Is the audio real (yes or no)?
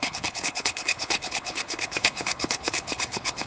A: no